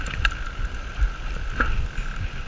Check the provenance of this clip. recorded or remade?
recorded